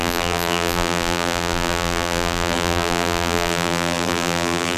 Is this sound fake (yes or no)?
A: yes